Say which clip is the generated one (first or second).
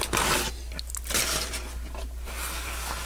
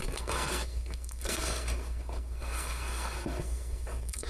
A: second